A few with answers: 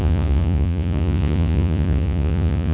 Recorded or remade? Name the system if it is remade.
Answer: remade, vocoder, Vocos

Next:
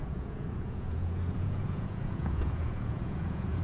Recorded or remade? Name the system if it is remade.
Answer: remade, vocoder, Vocos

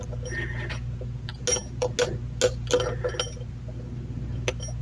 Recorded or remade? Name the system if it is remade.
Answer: recorded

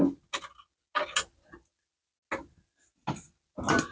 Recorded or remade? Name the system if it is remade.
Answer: recorded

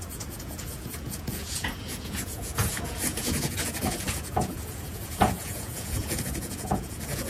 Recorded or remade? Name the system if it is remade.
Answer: remade, vocoder, Vocos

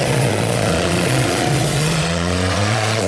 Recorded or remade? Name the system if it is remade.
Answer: remade, vocoder, Vocos